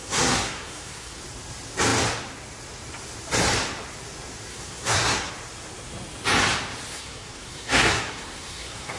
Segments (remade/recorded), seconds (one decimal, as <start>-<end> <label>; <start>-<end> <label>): 0.0-1.2 remade; 1.2-4.5 recorded; 4.5-5.3 remade; 5.3-6.9 recorded; 6.9-9.0 remade